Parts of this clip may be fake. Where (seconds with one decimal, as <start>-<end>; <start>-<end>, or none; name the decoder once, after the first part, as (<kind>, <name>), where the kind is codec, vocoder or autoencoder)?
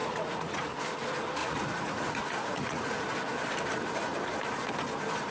0.0-0.8 (vocoder, Vocos); 1.4-3.0